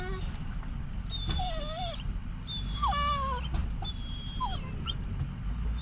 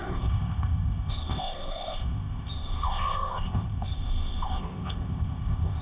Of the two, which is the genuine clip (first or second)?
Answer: first